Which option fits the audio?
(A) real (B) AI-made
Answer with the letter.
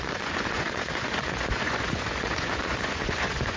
B